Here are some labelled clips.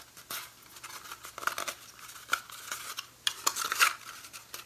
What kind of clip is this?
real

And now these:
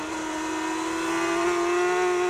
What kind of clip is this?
real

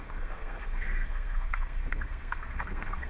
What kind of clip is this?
fake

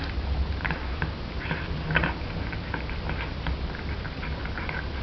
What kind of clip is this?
real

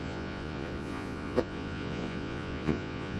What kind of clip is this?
fake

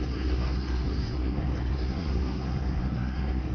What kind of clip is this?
fake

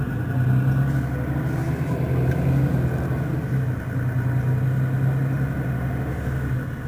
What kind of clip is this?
real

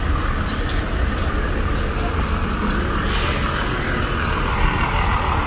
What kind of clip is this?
real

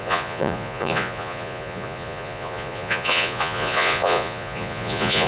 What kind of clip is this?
fake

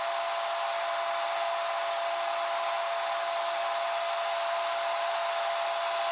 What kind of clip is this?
real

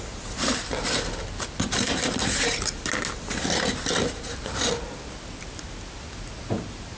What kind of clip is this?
real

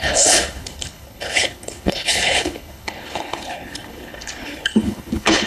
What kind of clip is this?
fake